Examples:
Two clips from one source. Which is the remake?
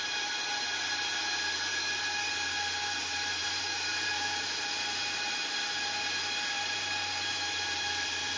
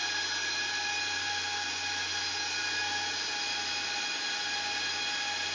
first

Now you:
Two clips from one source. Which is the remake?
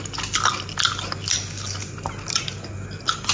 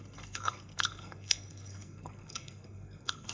second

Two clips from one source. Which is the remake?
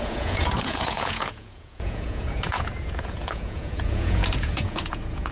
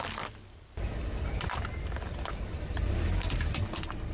first